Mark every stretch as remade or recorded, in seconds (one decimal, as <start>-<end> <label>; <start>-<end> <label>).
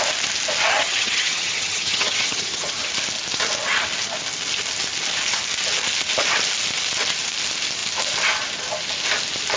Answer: 0.0-0.7 recorded; 0.7-2.9 remade; 2.9-9.6 recorded